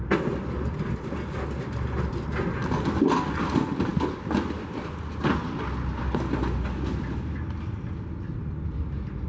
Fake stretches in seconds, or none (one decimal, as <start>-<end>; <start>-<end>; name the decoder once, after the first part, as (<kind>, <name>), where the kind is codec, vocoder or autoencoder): none

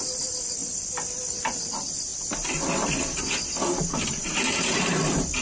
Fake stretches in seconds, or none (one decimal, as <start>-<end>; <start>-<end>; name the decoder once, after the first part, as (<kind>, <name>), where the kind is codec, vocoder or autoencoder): none

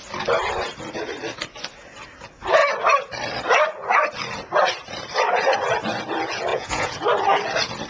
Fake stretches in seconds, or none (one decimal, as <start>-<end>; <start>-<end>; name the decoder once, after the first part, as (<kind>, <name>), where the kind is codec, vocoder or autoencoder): 6.5-7.0 (vocoder, Vocos)

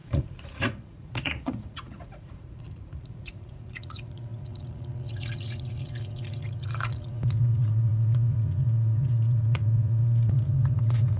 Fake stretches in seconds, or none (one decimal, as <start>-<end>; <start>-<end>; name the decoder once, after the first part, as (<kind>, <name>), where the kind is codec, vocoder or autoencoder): 0.0-11.2 (vocoder, Vocos)

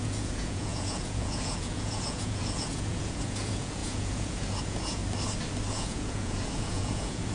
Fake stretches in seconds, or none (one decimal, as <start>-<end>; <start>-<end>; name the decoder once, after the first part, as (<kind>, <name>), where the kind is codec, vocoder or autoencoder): 0.0-5.0 (vocoder, Vocos); 5.7-7.3

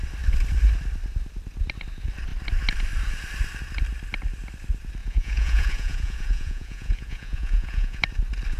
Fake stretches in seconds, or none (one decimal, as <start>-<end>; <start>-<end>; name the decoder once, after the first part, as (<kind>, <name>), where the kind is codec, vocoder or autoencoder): 5.0-8.0 (vocoder, Vocos)